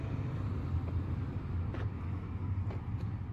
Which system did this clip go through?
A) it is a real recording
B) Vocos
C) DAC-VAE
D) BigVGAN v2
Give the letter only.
D